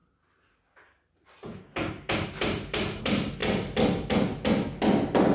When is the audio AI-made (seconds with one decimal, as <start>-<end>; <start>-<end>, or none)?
3.4-4.1